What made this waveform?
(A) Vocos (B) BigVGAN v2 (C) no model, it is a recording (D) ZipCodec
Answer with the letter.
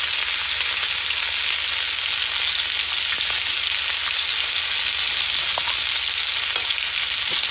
C